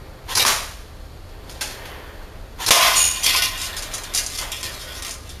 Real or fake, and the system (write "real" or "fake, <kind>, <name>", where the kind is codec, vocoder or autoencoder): real